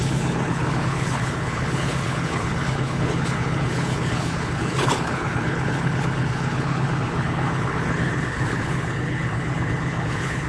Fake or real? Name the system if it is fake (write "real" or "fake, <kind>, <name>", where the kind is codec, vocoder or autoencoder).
fake, codec, HILCodec